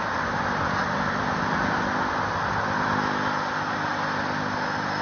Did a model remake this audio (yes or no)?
no